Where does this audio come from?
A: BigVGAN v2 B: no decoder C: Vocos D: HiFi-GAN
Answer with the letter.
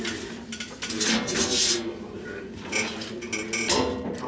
B